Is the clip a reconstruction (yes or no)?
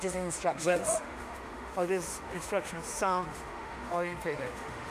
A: yes